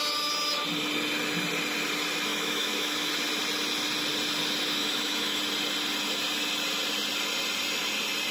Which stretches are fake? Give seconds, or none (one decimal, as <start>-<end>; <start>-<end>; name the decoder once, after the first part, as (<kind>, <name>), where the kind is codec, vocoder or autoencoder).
2.3-3.1 (autoencoder, DAC-VAE); 4.8-5.4